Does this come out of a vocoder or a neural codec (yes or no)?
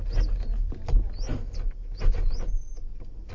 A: no